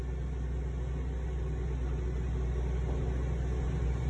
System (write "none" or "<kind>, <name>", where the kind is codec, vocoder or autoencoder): none